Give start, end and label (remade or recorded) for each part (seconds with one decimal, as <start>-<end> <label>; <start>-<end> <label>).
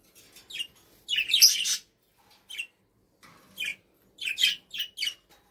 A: 0.0-5.5 recorded